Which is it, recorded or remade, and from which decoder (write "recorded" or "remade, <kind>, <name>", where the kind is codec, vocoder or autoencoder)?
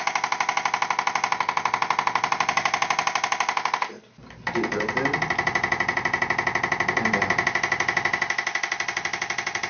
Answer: recorded